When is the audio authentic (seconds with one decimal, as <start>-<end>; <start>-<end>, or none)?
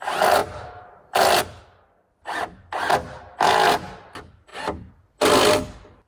0.0-0.4; 2.1-4.5; 5.4-6.1